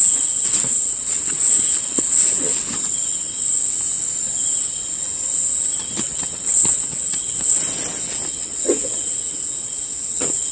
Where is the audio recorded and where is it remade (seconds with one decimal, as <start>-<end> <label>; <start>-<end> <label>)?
0.0-2.5 remade; 2.5-6.0 recorded; 6.0-7.6 remade; 7.6-8.3 recorded; 8.3-10.5 remade